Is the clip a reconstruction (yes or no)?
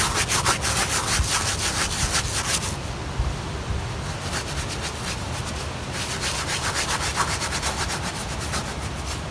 no